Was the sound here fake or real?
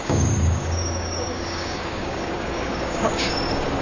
fake